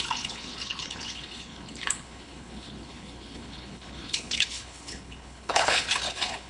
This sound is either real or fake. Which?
fake